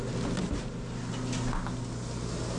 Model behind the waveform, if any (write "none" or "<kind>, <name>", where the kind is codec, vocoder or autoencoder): none